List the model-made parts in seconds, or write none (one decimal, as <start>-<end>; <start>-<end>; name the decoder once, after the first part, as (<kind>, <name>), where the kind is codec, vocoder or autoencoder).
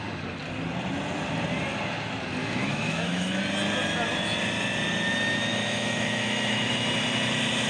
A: 2.4-3.4 (autoencoder, DAC-VAE); 5.5-6.7